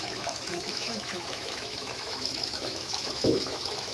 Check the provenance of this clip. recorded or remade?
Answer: remade